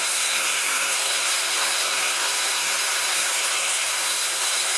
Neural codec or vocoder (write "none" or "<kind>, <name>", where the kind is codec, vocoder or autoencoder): codec, SNAC